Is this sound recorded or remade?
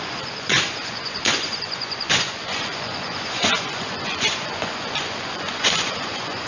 remade